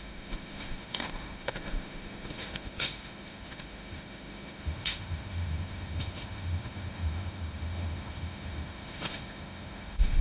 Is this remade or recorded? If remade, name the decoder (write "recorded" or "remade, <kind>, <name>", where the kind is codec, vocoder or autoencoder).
remade, autoencoder, DAC-VAE